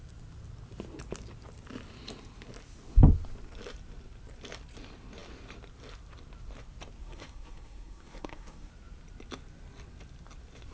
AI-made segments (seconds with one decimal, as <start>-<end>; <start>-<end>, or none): 7.0-8.7